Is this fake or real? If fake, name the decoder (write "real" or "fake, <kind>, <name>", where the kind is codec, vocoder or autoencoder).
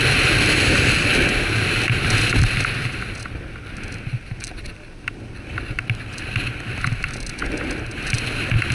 real